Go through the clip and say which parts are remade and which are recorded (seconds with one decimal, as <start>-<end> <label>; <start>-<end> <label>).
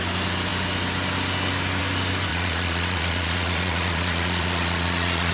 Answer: 0.0-2.3 recorded; 2.3-5.3 remade